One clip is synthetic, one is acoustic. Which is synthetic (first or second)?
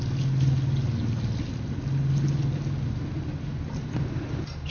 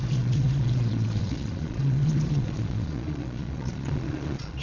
second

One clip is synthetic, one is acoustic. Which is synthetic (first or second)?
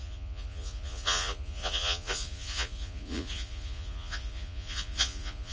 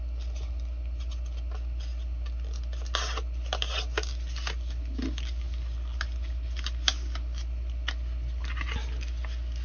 first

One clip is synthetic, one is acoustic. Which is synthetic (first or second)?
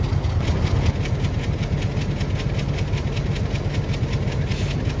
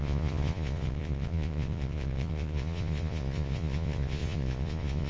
second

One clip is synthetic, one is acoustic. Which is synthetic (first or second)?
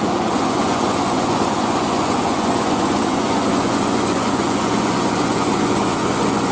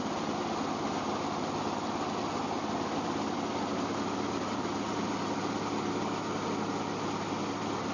first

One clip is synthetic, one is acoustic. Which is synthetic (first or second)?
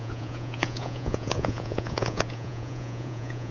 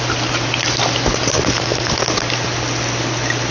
first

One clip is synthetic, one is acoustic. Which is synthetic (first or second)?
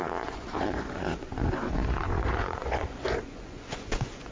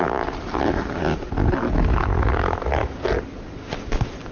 first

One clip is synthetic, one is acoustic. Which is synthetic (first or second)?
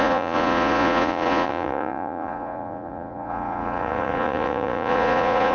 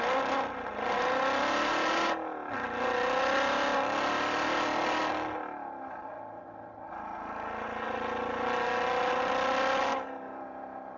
first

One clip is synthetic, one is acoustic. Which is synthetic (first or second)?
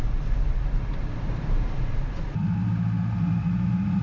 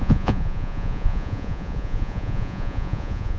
second